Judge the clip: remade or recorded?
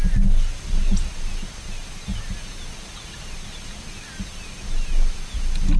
recorded